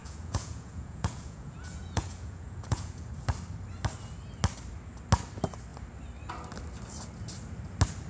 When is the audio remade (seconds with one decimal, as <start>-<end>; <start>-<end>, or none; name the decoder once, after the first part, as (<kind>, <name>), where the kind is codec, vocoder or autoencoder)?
0.0-3.1 (vocoder, Vocos)